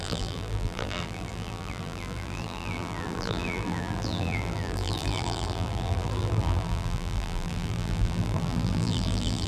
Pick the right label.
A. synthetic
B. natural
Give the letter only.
A